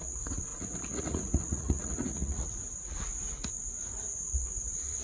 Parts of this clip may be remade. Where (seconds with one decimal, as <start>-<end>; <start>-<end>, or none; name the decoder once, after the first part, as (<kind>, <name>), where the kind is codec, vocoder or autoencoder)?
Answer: 0.0-5.0 (vocoder, Vocos)